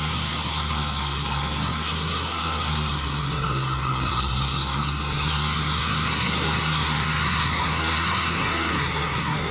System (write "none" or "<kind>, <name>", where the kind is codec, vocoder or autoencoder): codec, SNAC